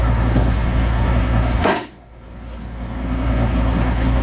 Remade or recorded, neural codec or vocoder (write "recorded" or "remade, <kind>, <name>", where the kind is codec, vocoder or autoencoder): remade, codec, SNAC